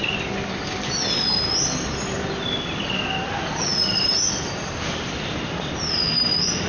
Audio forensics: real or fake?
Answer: real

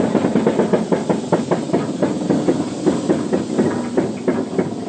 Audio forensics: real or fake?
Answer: real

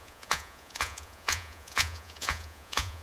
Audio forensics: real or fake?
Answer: fake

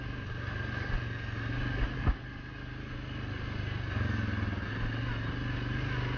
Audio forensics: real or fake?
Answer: real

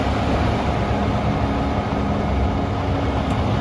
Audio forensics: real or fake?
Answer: real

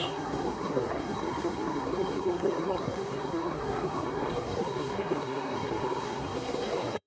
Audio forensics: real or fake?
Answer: fake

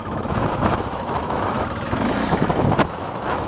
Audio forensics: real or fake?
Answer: fake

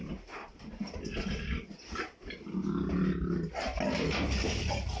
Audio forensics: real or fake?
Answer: real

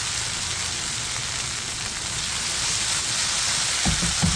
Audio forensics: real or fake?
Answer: real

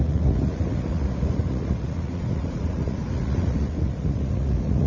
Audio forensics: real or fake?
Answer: fake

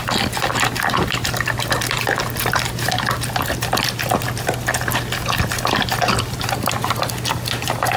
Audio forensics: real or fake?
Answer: real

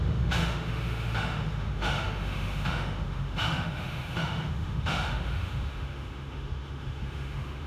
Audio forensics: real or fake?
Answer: fake